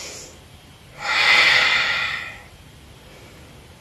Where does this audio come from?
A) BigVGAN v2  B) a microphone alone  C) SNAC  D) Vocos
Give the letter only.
B